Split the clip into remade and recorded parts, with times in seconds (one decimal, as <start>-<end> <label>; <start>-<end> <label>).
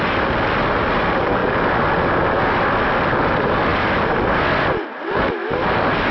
0.0-6.1 recorded